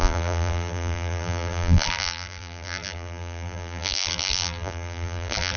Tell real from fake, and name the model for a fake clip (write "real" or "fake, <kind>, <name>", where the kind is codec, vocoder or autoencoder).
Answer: fake, vocoder, BigVGAN v2